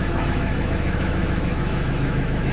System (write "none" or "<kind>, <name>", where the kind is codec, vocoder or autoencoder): autoencoder, DAC-VAE